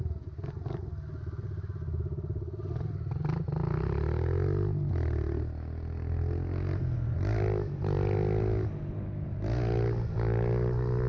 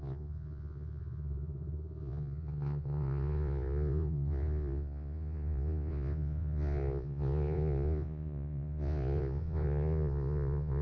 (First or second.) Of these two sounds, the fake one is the second